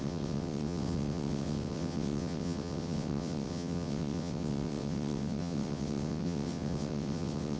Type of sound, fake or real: fake